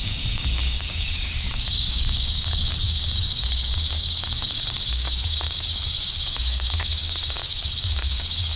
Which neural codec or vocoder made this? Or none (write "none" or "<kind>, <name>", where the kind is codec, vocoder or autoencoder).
codec, DAC